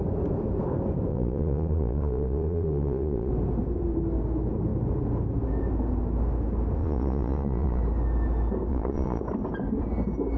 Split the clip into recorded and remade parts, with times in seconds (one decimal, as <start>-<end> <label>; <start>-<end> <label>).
0.0-1.1 recorded; 1.1-3.3 remade; 3.3-6.8 recorded; 6.8-7.8 remade; 7.8-8.7 recorded; 8.7-9.2 remade; 9.2-10.4 recorded